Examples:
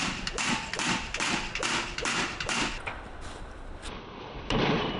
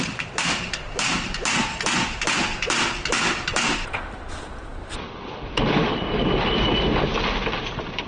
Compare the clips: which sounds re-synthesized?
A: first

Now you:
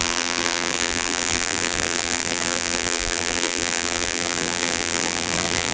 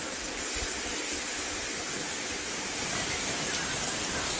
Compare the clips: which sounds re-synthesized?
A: first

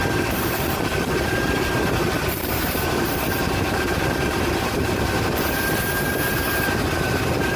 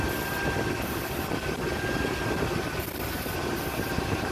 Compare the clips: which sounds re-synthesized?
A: first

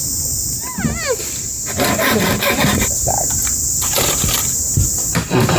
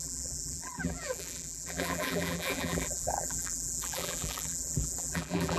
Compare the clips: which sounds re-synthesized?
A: second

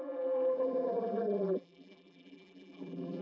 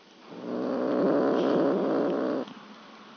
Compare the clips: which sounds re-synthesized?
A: first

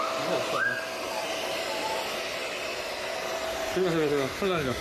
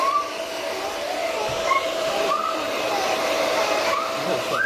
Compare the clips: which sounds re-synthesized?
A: second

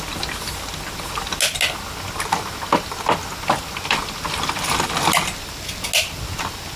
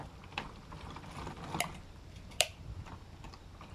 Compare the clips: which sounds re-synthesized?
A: second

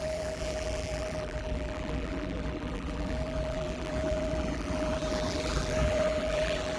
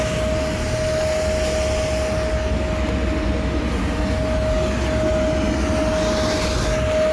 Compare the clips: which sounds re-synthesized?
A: first